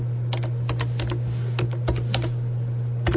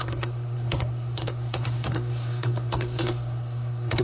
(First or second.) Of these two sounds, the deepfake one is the second